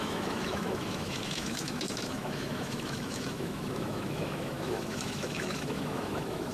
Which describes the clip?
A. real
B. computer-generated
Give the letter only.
B